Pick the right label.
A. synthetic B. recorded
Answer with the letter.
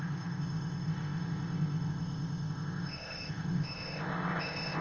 A